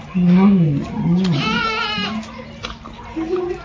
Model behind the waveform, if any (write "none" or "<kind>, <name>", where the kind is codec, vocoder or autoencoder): none